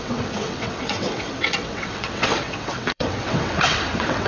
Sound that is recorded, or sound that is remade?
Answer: remade